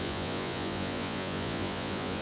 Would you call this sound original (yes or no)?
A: no